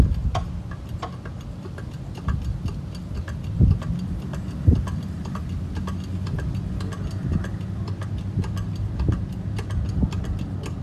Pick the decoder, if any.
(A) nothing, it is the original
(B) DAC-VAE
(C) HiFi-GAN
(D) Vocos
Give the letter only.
A